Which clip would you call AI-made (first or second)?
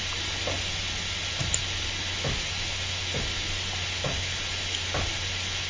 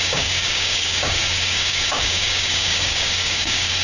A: second